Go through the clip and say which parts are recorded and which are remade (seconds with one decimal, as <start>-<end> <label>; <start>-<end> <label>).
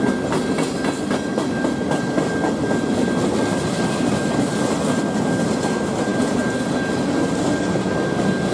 0.0-8.5 recorded